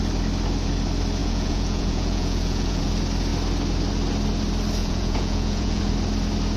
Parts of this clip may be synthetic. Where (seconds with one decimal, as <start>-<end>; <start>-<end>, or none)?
1.2-2.8; 4.8-5.9